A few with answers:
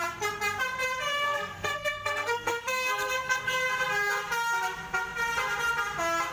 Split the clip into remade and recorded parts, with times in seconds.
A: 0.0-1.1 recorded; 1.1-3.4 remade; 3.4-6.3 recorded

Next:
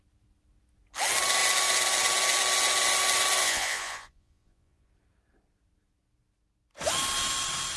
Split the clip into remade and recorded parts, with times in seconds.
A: 0.0-3.4 recorded; 3.4-4.9 remade; 4.9-7.8 recorded

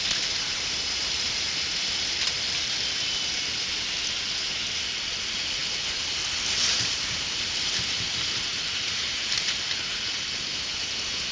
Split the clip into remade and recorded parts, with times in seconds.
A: 0.0-11.3 recorded

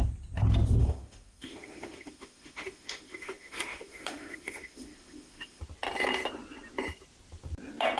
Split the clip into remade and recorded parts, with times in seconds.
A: 0.0-0.8 recorded; 0.8-5.6 remade; 5.6-8.0 recorded

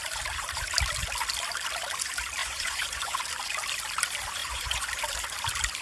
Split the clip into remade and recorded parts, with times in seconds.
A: 0.0-2.4 recorded; 2.4-3.2 remade; 3.2-4.4 recorded; 4.4-4.9 remade; 4.9-5.8 recorded

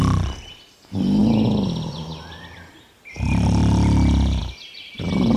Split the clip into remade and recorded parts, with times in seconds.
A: 0.0-5.4 recorded